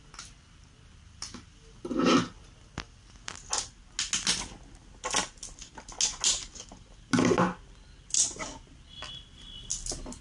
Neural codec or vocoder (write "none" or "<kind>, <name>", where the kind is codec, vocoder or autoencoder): none